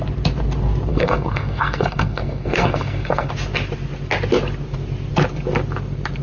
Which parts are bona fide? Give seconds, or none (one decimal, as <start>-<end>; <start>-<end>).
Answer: 0.0-0.9; 3.3-6.2